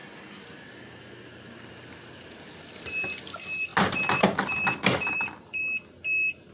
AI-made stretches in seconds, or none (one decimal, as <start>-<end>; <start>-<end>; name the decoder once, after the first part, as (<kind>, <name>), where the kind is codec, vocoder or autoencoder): 3.7-5.6 (vocoder, BigVGAN v2)